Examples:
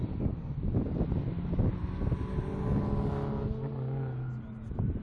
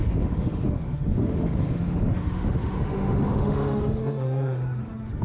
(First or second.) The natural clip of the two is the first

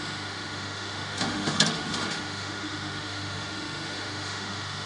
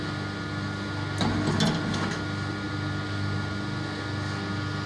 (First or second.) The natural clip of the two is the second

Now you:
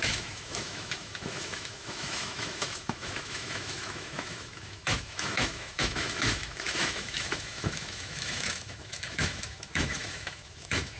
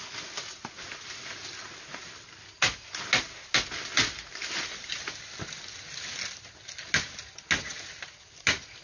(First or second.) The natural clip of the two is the second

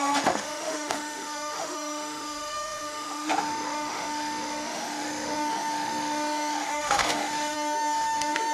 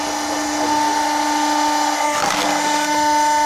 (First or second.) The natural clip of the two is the second